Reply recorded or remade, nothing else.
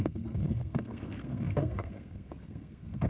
remade